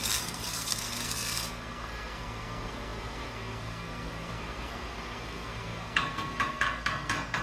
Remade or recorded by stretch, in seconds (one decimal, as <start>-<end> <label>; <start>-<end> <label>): 0.0-7.4 remade